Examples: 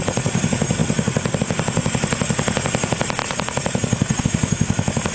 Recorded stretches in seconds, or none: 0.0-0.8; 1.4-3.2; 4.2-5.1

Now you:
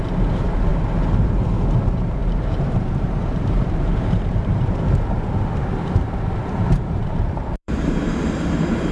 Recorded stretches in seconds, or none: 0.7-1.2

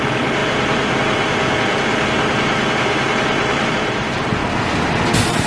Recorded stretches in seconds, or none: 0.0-0.4; 3.7-5.5

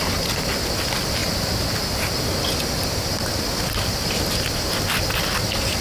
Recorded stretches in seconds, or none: 0.0-5.8

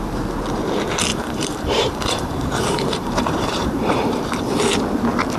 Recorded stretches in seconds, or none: 0.0-1.1; 4.2-5.4

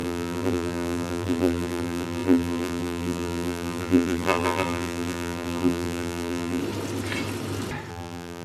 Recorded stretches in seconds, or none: 6.6-7.9

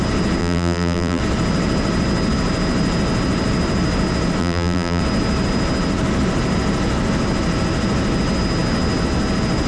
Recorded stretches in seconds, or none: 0.0-0.4; 1.2-4.4; 5.0-9.7